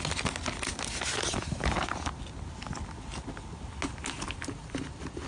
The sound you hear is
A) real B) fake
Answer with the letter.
A